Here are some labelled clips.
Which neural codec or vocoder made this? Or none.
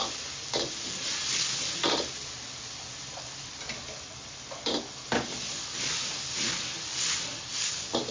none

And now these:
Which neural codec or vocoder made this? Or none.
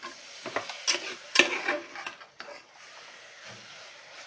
none